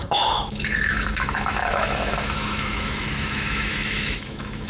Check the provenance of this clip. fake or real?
fake